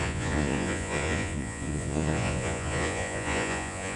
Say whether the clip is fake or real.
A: fake